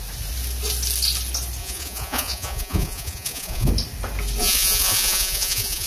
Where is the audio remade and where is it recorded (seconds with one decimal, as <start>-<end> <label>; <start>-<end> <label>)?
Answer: 0.0-1.6 recorded; 1.6-3.7 remade; 3.7-4.4 recorded; 4.4-5.9 remade

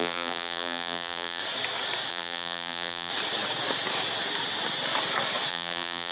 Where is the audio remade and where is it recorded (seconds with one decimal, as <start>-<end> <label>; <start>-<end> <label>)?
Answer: 0.0-1.4 remade; 1.4-2.1 recorded; 2.1-3.1 remade; 3.1-5.5 recorded; 5.5-6.1 remade

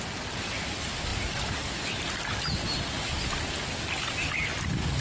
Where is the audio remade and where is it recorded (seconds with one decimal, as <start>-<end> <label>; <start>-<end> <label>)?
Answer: 0.0-5.0 recorded

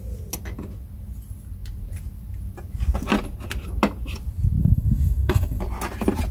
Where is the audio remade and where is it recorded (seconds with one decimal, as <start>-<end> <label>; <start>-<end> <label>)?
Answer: 0.0-4.6 recorded; 4.6-5.6 remade; 5.6-6.3 recorded

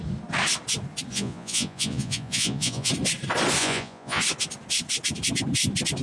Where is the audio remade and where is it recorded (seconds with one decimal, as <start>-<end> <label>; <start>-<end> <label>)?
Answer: 0.0-1.1 recorded; 1.1-2.9 remade; 2.9-3.6 recorded; 3.6-4.2 remade; 4.2-6.0 recorded